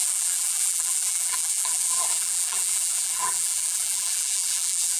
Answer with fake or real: fake